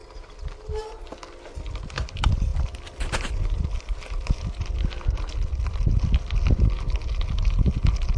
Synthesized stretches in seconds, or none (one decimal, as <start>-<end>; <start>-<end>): none